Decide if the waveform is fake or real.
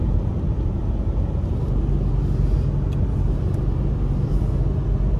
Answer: real